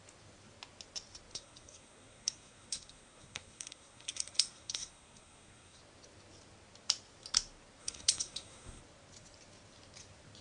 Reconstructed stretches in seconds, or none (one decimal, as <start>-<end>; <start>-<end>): 1.3-5.8; 7.8-8.8